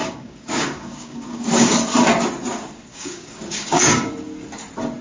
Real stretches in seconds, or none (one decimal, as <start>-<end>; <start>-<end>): 1.8-2.9; 4.1-5.0